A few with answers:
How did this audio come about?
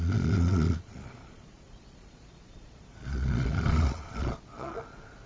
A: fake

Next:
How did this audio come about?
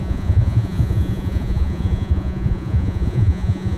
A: fake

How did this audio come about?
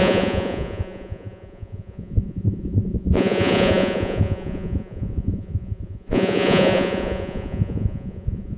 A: fake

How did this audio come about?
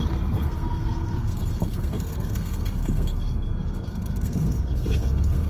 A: fake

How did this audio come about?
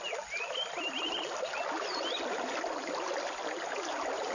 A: real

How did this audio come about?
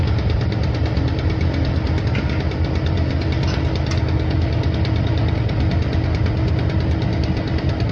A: real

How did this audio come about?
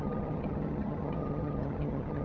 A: fake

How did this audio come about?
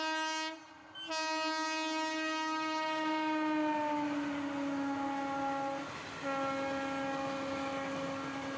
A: real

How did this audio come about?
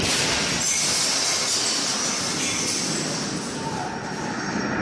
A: real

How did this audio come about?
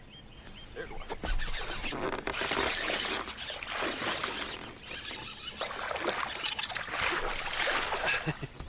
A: real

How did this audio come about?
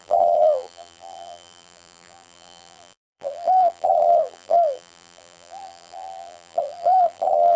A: fake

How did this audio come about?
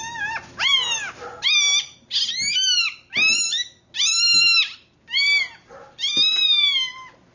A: real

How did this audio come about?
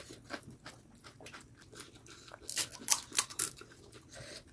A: real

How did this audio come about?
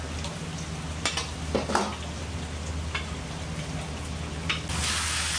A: real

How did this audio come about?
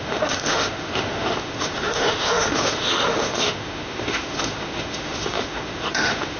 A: fake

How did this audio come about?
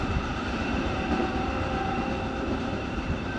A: fake